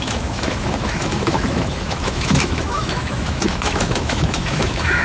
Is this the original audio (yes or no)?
no